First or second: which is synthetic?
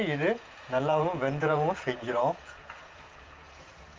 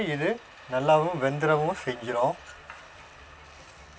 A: first